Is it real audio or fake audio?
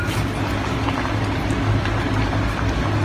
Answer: real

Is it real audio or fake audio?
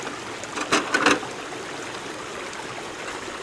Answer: real